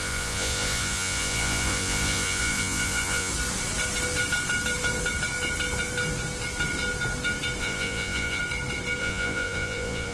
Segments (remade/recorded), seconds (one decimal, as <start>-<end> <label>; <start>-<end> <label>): 0.0-3.3 remade; 3.3-7.6 recorded; 7.6-8.4 remade; 8.4-9.0 recorded; 9.0-10.1 remade